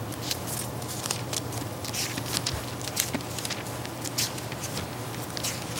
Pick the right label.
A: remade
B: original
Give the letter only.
B